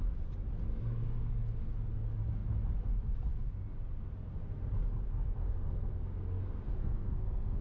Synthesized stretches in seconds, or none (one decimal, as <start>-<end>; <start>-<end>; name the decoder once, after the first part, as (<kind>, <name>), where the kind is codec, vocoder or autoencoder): 0.7-1.3 (codec, SNAC); 5.4-7.6